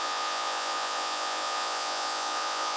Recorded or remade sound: remade